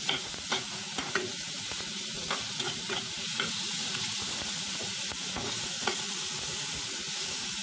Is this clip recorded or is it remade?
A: remade